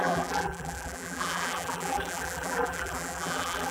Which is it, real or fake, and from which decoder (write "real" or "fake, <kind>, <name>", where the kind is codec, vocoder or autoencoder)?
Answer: fake, vocoder, BigVGAN v2